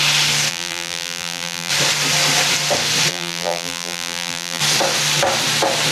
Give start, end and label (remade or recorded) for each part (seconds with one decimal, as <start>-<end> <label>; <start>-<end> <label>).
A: 0.0-0.5 recorded; 0.5-1.7 remade; 1.7-3.1 recorded; 3.1-4.6 remade; 4.6-5.9 recorded